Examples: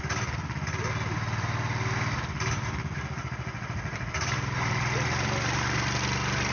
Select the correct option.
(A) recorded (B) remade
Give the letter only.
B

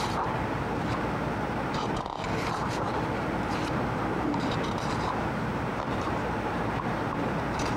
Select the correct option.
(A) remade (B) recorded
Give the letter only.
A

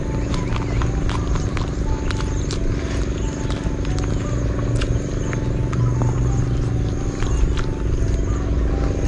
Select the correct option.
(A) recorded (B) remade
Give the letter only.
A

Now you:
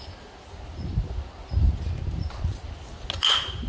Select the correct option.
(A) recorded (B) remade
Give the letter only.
A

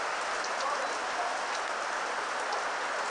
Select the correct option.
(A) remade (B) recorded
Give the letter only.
B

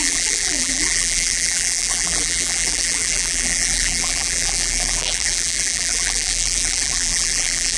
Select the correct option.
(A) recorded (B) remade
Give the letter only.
B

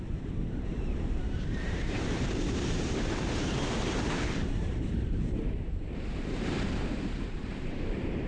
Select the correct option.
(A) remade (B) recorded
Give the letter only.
A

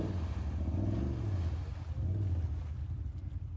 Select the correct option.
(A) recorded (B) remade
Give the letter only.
A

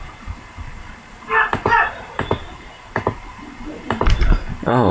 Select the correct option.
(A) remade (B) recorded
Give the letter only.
A